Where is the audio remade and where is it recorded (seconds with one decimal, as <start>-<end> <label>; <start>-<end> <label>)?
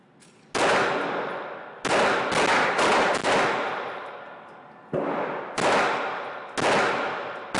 0.0-7.6 recorded